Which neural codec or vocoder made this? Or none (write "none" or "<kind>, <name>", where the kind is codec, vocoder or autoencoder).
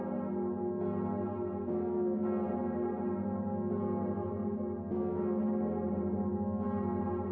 none